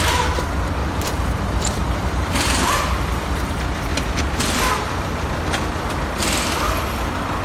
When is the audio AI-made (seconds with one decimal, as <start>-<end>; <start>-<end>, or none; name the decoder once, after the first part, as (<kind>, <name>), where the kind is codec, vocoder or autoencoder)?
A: 0.8-3.5 (vocoder, BigVGAN v2); 3.9-5.9